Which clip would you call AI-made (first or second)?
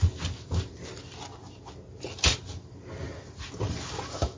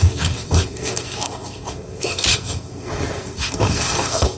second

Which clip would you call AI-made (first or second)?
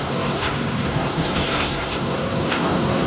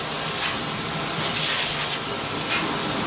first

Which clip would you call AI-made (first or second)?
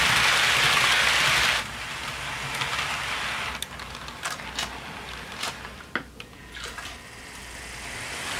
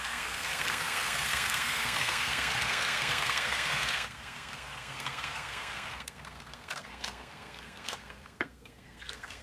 second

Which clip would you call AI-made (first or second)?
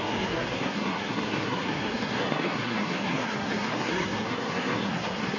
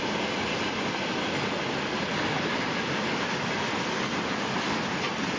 first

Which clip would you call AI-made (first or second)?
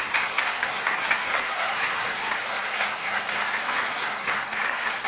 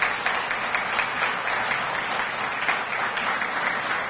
first